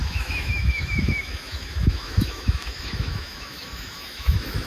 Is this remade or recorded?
remade